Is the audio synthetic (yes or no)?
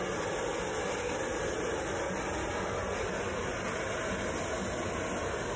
no